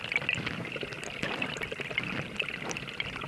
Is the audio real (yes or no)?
yes